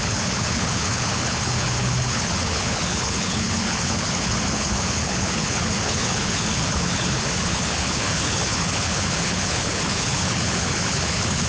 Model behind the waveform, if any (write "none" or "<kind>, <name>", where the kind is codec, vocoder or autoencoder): codec, HILCodec